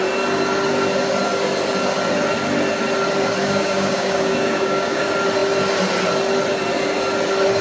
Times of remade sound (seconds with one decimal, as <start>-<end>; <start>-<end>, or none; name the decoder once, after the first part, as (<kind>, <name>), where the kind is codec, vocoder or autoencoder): 3.4-5.0 (codec, DAC)